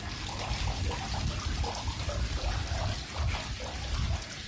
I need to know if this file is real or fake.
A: real